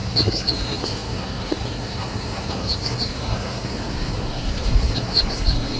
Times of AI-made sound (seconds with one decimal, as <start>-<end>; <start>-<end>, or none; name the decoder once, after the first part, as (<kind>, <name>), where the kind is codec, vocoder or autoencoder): 0.0-5.8 (codec, SNAC)